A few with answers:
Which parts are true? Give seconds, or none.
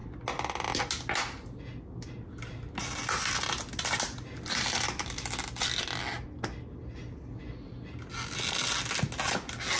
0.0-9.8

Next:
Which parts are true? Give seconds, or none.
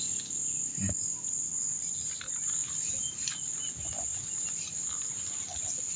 0.0-6.0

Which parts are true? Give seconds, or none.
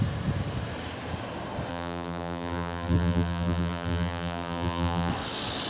0.0-1.7; 5.1-5.7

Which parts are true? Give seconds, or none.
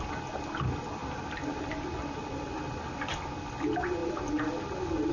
0.0-1.0; 3.4-4.0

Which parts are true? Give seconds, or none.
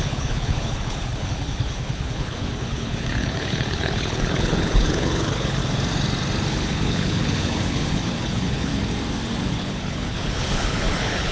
5.6-6.5; 8.7-9.5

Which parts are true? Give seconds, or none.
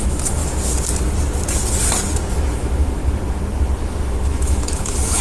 0.4-2.3; 3.0-3.9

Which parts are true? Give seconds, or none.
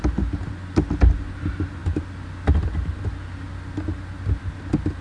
0.0-5.0